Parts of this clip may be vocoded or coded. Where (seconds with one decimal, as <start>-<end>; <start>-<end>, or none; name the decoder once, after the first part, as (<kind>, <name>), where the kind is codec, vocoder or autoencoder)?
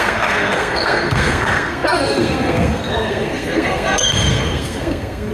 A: 0.0-5.3 (codec, SNAC)